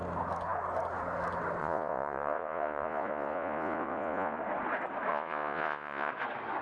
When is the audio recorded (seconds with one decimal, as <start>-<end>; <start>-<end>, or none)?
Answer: 0.0-1.6; 4.4-5.1; 6.1-6.6